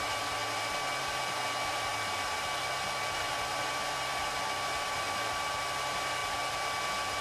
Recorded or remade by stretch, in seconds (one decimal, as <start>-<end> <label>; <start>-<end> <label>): 0.0-0.4 remade; 0.4-1.0 recorded; 1.0-6.2 remade; 6.2-7.2 recorded

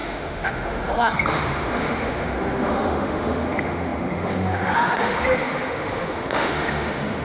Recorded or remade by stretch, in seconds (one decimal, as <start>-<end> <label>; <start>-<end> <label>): 0.0-7.2 remade

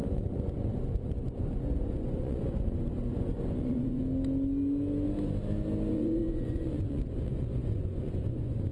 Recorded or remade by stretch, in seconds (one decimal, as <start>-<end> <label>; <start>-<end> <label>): 0.0-4.0 remade; 4.0-5.9 recorded; 5.9-8.7 remade

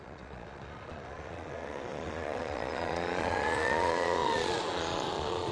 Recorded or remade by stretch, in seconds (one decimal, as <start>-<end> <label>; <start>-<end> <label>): 0.0-5.5 remade

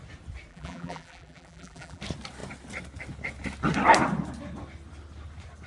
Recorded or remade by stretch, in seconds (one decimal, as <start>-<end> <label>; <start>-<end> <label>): 0.0-0.5 recorded; 0.5-2.0 remade; 2.0-5.7 recorded

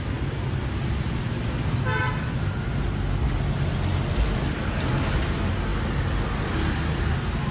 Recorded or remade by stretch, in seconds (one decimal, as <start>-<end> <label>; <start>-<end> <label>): 0.0-7.5 recorded

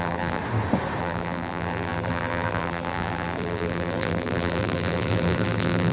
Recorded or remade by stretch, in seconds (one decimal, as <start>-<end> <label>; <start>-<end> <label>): 0.0-0.4 remade; 0.4-1.0 recorded; 1.0-5.9 remade